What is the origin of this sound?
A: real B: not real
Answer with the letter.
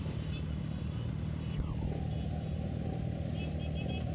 A